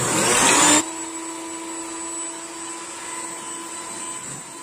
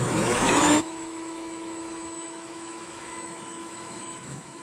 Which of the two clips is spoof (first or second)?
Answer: second